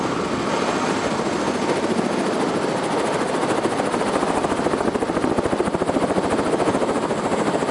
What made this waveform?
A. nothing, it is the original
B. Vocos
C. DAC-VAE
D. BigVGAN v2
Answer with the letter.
A